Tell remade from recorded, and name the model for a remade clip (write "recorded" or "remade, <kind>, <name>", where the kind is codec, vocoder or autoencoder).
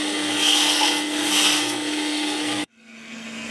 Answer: remade, codec, SNAC